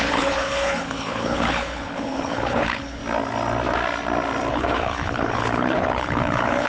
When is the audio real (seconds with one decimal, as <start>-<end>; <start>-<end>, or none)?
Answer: 3.0-4.5